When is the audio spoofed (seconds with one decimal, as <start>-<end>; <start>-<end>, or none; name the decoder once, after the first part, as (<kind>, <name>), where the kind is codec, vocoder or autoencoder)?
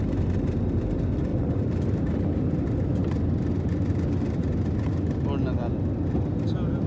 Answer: 1.3-2.4 (vocoder, BigVGAN v2)